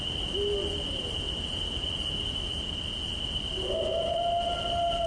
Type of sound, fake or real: real